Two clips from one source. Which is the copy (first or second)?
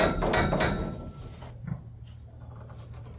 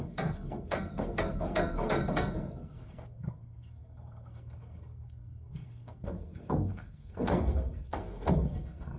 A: second